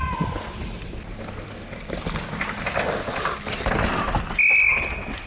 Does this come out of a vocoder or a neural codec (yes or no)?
no